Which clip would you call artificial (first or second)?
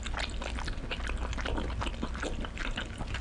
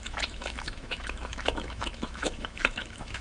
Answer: second